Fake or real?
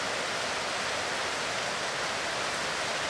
real